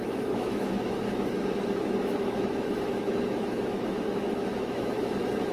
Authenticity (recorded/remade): remade